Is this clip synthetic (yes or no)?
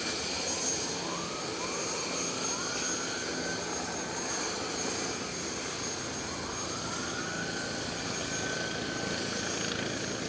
no